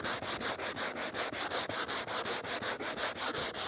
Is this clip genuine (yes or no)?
yes